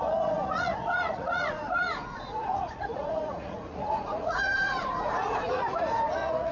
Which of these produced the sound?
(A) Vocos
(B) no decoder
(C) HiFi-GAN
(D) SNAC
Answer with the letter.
A